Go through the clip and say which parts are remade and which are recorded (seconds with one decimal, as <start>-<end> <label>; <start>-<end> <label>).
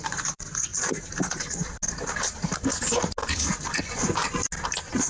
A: 0.0-0.7 remade; 0.7-3.8 recorded; 3.8-4.2 remade; 4.2-5.1 recorded